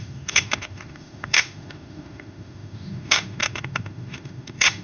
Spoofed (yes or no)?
yes